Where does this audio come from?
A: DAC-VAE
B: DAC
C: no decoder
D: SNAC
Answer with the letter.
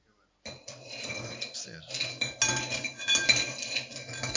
C